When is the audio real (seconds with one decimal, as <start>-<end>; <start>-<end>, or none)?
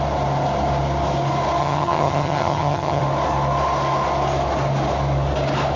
0.0-1.6; 3.0-5.8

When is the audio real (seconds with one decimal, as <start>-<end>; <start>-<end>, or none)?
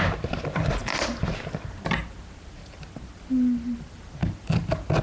0.0-5.0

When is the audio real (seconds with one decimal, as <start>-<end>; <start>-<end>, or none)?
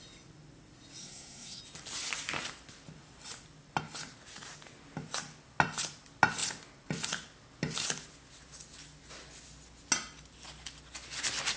0.0-1.0; 1.6-11.6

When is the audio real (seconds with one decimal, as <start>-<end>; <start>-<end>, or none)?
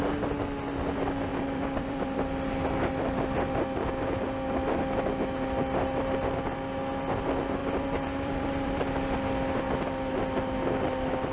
0.0-1.3; 2.5-7.6; 8.8-11.3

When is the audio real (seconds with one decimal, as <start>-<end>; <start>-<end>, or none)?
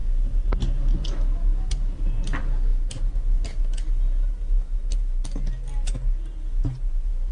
0.0-7.3